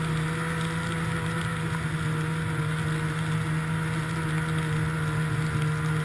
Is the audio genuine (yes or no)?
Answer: yes